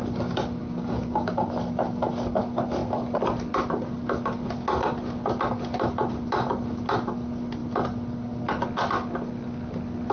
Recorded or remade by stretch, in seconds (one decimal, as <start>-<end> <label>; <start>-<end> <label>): 0.0-0.6 recorded; 0.6-1.3 remade; 1.3-10.1 recorded